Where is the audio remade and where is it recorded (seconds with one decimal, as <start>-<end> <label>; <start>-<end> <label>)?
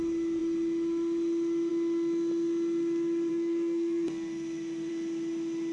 0.0-3.3 recorded; 3.3-4.9 remade; 4.9-5.7 recorded